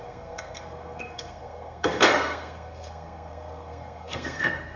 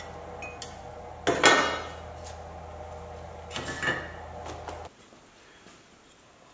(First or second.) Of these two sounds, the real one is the second